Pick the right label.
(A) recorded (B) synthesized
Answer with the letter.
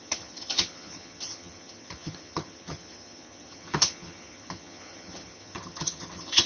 B